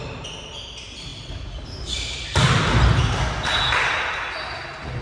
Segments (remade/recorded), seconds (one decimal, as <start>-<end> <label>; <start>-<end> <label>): 0.0-5.0 recorded